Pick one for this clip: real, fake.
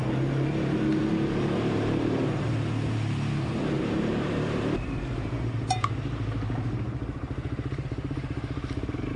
fake